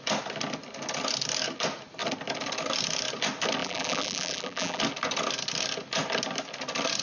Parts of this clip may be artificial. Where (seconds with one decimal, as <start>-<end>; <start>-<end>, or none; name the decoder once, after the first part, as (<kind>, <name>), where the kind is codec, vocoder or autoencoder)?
3.6-4.8 (vocoder, BigVGAN v2)